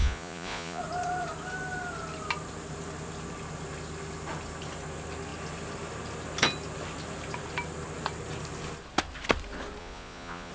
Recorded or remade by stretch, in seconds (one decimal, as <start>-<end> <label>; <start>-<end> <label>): 0.0-0.8 remade; 0.8-9.8 recorded; 9.8-10.5 remade